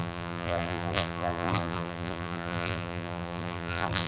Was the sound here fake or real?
fake